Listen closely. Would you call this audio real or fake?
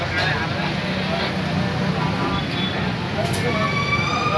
real